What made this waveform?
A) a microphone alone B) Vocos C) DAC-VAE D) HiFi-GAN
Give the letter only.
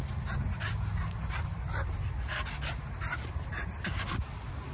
A